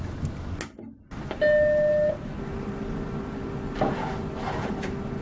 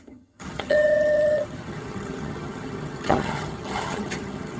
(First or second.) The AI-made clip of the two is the second